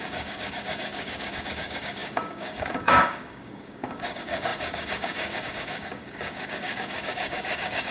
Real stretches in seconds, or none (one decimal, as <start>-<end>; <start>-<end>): none